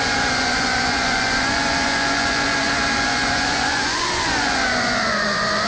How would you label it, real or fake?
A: fake